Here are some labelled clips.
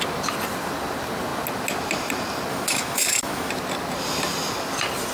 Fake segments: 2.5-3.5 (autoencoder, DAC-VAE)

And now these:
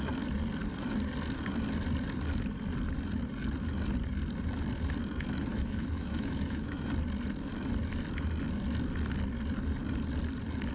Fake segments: 5.5-6.9 (autoencoder, DAC-VAE)

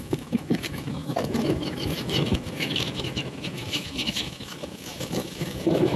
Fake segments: 0.0-6.0 (autoencoder, DAC-VAE)

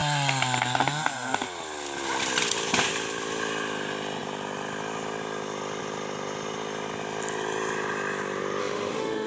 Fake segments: 8.6-9.3 (autoencoder, DAC-VAE)

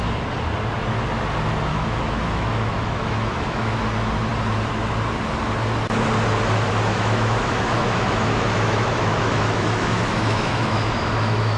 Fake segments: 1.7-3.8 (autoencoder, DAC-VAE); 6.9-11.6